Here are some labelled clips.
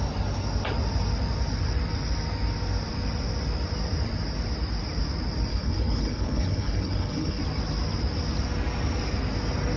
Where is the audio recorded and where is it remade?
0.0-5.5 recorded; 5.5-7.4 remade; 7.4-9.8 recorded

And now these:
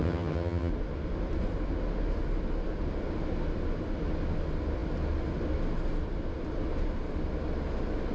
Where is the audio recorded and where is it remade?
0.0-0.7 remade; 0.7-8.1 recorded

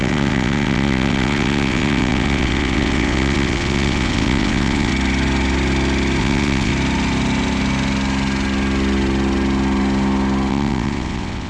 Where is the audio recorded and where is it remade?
0.0-4.9 remade; 4.9-6.2 recorded; 6.2-6.7 remade; 6.7-10.5 recorded; 10.5-11.5 remade

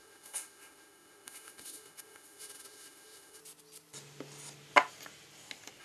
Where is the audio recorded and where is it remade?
0.0-3.4 remade; 3.4-5.8 recorded

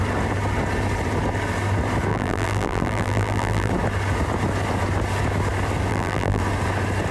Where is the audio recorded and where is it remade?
0.0-2.1 recorded; 2.1-3.7 remade; 3.7-5.9 recorded; 5.9-6.4 remade; 6.4-7.1 recorded

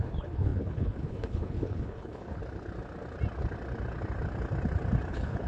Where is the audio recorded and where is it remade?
0.0-2.4 remade; 2.4-5.1 recorded; 5.1-5.5 remade